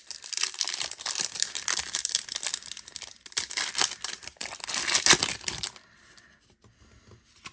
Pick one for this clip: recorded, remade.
recorded